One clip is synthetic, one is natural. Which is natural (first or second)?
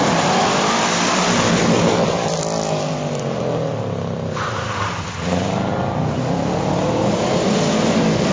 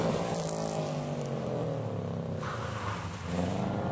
second